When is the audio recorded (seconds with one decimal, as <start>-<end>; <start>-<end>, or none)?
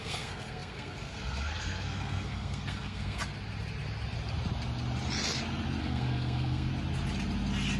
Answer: 3.3-5.8; 6.7-7.8